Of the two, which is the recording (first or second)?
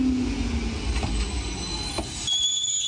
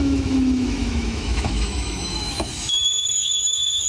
first